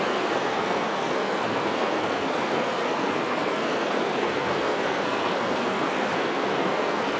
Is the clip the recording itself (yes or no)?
no